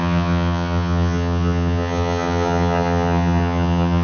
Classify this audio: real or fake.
fake